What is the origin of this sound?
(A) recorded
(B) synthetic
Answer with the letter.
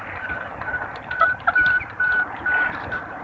B